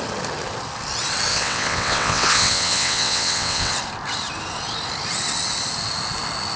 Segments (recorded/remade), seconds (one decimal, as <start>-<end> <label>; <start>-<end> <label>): 0.0-1.3 recorded; 1.3-3.7 remade; 3.7-6.6 recorded